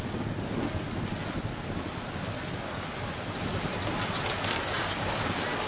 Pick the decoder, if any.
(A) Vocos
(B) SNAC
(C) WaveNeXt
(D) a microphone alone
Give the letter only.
D